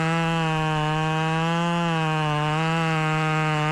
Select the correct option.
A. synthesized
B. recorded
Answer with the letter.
A